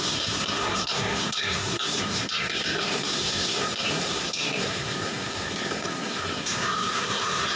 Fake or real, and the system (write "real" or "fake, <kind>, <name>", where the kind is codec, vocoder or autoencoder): fake, codec, SNAC